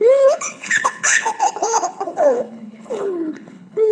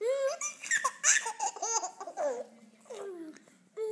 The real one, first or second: second